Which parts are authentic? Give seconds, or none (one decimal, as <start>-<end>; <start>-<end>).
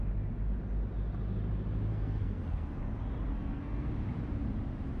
0.0-1.9; 2.8-3.3; 3.9-5.0